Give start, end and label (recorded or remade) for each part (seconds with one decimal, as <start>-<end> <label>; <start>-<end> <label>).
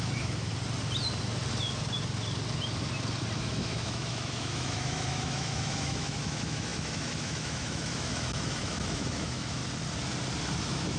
0.0-0.5 remade; 0.5-3.4 recorded; 3.4-9.6 remade; 9.6-10.6 recorded; 10.6-11.0 remade